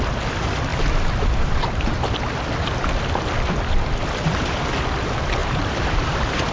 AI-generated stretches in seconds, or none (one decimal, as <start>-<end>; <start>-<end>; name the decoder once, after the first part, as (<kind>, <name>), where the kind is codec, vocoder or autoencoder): 0.7-2.0 (vocoder, BigVGAN v2); 5.4-6.5